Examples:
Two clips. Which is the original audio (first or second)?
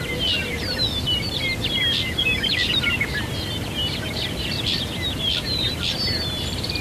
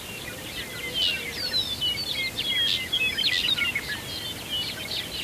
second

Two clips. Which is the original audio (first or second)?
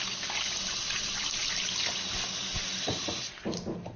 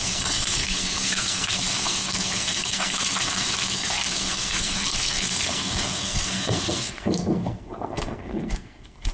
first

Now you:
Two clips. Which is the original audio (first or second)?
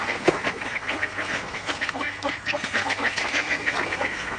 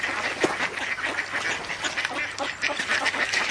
second